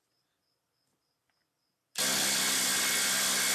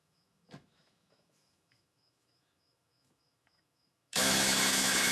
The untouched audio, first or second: first